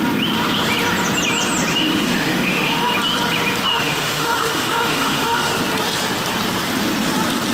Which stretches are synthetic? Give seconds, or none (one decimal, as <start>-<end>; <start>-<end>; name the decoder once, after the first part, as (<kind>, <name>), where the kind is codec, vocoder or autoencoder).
1.7-2.9 (autoencoder, DAC-VAE); 3.7-5.5